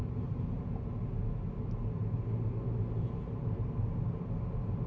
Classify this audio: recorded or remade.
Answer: recorded